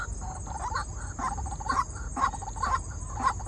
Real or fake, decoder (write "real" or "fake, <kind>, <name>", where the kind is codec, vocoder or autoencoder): real